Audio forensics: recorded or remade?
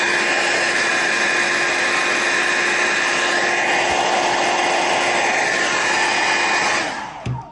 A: recorded